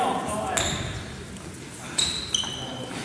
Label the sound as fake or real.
real